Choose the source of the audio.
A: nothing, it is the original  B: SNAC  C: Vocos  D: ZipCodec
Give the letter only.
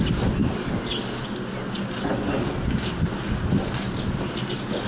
A